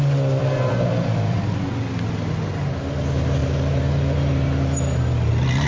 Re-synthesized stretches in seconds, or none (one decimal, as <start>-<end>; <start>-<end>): none

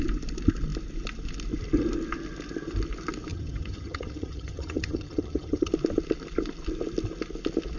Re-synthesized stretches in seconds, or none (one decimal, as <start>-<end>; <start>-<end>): 3.3-5.7

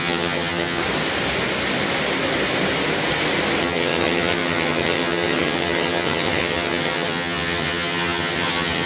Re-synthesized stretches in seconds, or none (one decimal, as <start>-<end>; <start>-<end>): 0.0-0.8; 3.6-8.9

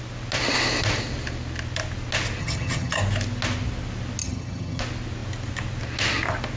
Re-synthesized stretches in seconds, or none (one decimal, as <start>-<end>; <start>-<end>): 2.4-3.0; 4.2-4.8